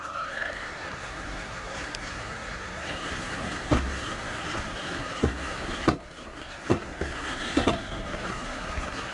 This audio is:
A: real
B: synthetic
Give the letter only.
B